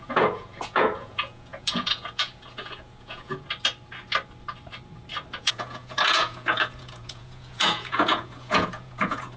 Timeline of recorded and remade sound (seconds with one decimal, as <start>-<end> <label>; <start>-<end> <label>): 0.0-3.3 remade; 3.3-5.4 recorded; 5.4-9.4 remade